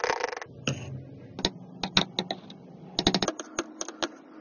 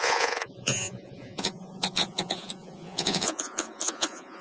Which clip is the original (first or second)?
first